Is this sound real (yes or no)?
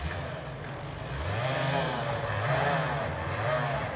yes